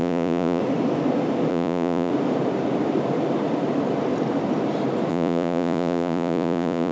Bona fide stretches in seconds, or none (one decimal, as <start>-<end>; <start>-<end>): 0.6-1.5; 2.1-5.1